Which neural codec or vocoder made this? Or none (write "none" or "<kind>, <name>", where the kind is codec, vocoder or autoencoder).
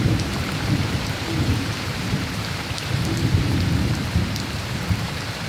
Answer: vocoder, BigVGAN v2